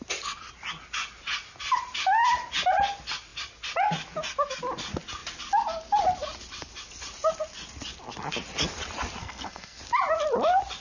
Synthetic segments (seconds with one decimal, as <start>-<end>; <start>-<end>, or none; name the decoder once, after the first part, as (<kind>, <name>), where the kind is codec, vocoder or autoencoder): 9.2-9.8 (codec, SNAC)